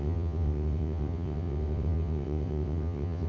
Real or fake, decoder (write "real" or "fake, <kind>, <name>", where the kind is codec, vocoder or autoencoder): fake, vocoder, WaveNeXt